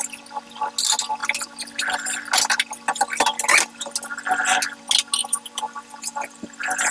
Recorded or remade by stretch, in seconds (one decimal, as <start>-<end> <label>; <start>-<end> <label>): 0.0-5.2 recorded; 5.2-6.9 remade